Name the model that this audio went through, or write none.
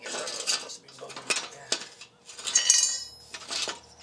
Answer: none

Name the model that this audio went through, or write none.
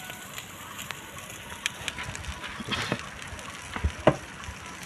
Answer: none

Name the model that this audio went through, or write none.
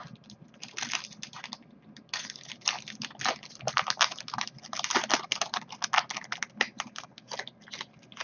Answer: none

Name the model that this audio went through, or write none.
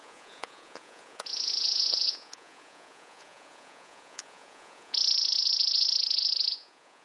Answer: vocoder, Vocos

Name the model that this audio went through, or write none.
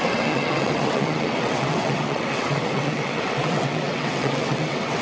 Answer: vocoder, WaveNeXt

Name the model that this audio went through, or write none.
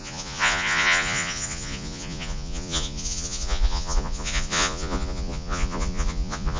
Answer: vocoder, Vocos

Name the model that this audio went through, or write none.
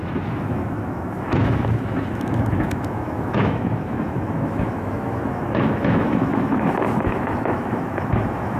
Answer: autoencoder, DAC-VAE